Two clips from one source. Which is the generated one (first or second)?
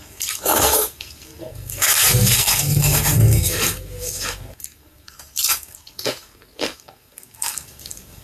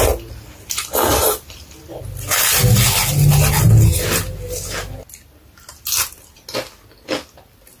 first